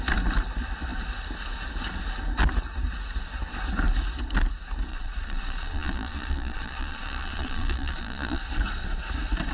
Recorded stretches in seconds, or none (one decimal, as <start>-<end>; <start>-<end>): 0.0-4.9; 8.4-9.5